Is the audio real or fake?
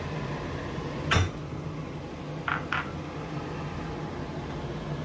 real